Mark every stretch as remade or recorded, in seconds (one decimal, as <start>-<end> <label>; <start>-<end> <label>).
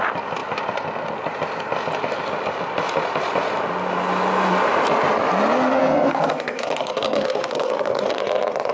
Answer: 0.0-5.8 recorded; 5.8-8.2 remade; 8.2-8.7 recorded